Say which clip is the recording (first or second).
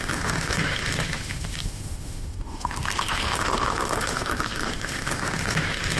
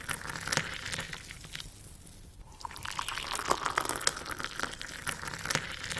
second